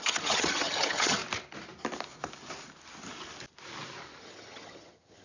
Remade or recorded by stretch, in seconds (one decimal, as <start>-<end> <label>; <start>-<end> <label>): 0.0-1.2 remade; 1.2-4.2 recorded; 4.2-5.2 remade